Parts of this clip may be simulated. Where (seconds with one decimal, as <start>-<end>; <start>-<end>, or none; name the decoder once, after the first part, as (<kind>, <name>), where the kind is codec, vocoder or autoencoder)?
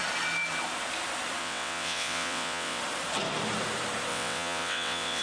1.4-2.8 (vocoder, WaveNeXt); 4.1-5.2